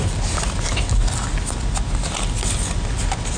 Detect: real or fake real